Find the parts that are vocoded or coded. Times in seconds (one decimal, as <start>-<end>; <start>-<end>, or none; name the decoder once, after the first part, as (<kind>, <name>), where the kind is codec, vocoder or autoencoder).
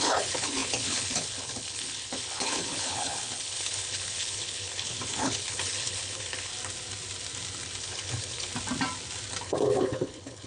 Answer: 0.0-6.5 (codec, HILCodec); 7.8-8.5; 9.4-10.5